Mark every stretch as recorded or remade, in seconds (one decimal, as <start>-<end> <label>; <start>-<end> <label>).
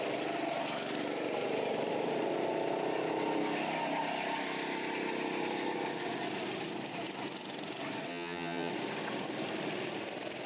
0.0-8.1 recorded; 8.1-8.7 remade; 8.7-10.5 recorded